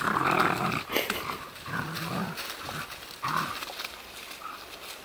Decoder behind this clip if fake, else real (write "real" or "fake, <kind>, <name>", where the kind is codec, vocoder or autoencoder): real